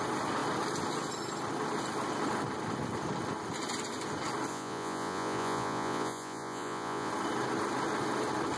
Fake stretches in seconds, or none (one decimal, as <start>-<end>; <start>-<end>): 4.5-7.1